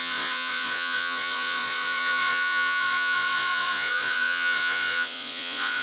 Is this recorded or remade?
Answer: remade